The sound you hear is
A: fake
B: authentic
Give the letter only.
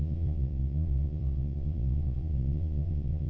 A